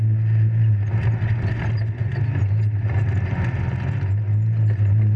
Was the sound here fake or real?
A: real